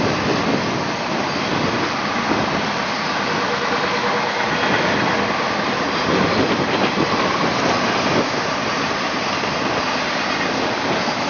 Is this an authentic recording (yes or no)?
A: yes